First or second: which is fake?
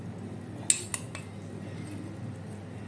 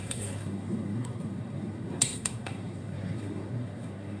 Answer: second